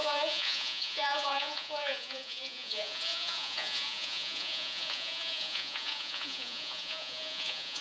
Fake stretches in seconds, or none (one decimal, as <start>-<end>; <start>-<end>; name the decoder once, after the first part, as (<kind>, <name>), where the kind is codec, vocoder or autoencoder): 0.0-7.8 (vocoder, Vocos)